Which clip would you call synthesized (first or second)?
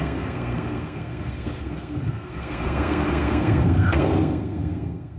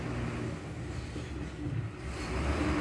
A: first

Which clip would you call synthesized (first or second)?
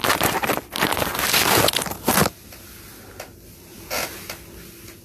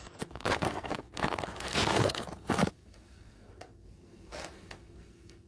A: second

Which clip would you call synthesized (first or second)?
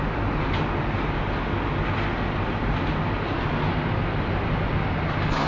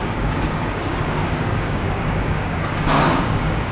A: second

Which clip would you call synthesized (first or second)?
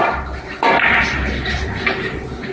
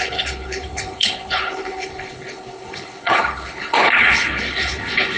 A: second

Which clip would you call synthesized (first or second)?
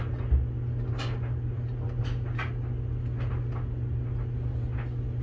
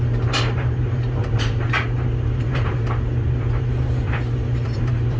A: second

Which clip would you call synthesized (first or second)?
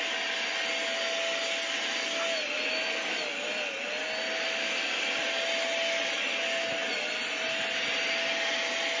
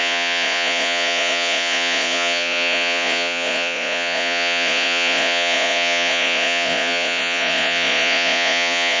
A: second